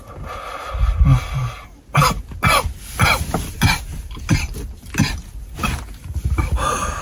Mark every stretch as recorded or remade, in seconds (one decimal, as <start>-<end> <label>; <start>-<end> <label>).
0.0-7.0 recorded